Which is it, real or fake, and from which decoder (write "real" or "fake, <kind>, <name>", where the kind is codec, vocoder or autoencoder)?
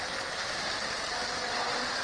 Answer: real